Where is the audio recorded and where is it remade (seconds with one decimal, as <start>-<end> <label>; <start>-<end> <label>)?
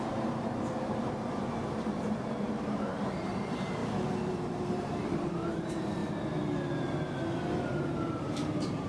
0.0-1.4 remade; 1.4-2.0 recorded; 2.0-3.8 remade; 3.8-4.3 recorded; 4.3-6.0 remade; 6.0-7.6 recorded; 7.6-8.9 remade